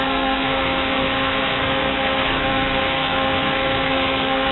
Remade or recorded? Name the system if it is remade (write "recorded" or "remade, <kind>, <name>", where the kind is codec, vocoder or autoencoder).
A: remade, codec, SNAC